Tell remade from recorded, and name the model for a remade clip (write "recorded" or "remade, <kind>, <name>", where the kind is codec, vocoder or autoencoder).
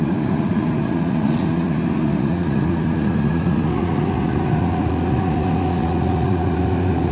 remade, vocoder, Vocos